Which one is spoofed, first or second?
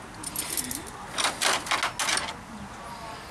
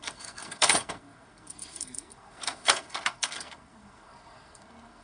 second